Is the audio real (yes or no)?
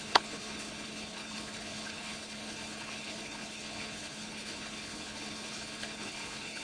no